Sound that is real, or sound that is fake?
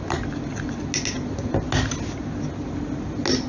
real